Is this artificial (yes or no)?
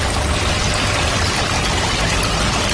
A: no